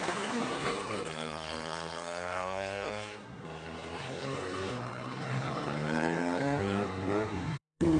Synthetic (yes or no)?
yes